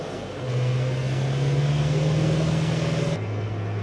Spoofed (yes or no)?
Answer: yes